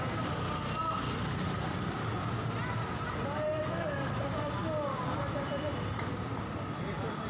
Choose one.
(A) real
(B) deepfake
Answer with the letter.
A